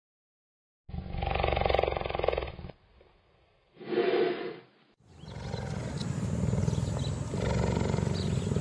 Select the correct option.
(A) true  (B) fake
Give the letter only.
A